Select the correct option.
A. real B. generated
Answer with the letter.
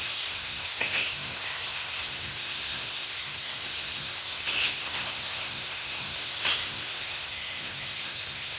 B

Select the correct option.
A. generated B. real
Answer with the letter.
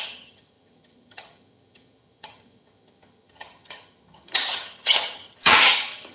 A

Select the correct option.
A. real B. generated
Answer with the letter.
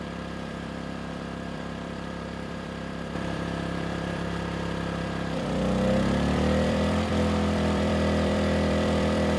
B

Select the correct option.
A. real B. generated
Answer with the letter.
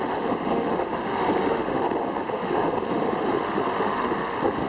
B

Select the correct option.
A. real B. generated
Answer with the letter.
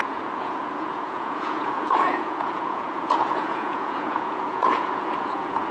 B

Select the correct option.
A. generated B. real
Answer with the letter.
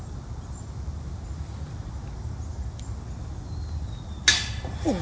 B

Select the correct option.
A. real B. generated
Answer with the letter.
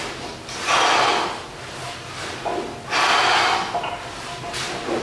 A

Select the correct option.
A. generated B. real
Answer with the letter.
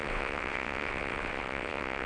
A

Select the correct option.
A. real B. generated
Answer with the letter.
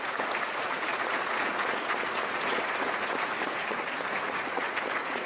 B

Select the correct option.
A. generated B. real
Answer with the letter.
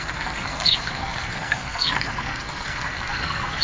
A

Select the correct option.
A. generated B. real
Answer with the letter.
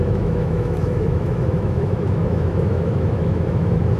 A